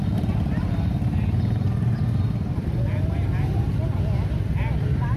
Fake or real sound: real